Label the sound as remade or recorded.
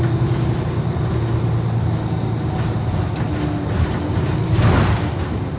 recorded